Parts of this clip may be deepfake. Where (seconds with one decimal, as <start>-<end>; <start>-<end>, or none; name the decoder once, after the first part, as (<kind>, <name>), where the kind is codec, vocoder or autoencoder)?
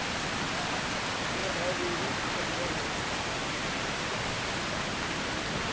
3.4-4.1 (vocoder, BigVGAN v2)